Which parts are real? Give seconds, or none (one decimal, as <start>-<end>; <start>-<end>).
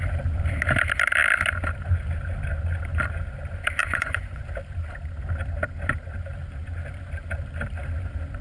0.0-3.8; 4.4-8.4